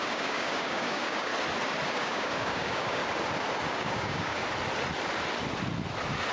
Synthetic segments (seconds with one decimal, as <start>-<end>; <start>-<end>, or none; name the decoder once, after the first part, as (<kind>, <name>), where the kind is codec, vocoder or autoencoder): 0.0-1.3 (codec, DAC); 1.9-3.0; 3.7-4.4